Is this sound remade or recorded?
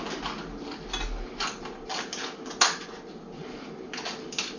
recorded